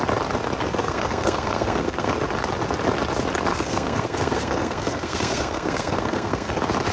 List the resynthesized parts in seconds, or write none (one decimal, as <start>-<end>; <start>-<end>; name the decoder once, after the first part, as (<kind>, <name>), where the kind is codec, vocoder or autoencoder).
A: 0.8-2.1 (codec, SNAC); 3.5-6.5